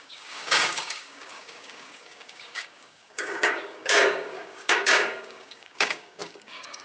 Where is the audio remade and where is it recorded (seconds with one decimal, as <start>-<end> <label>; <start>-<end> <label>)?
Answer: 0.0-6.8 remade